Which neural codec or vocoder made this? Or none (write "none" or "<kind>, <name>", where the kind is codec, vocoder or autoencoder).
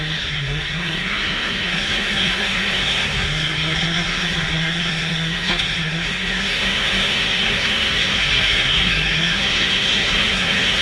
codec, SNAC